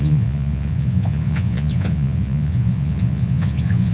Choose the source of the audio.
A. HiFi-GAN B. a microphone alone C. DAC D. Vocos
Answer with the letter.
D